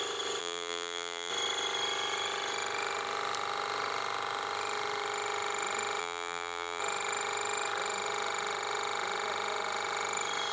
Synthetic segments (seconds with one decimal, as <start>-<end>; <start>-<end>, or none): 0.4-1.3; 6.0-6.8